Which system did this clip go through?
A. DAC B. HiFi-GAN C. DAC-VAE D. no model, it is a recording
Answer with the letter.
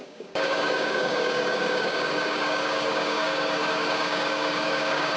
A